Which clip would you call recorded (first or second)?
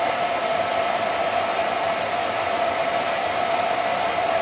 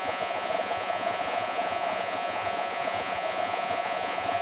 first